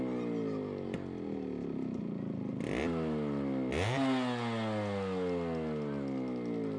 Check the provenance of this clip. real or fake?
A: real